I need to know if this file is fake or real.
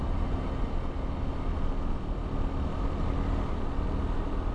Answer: real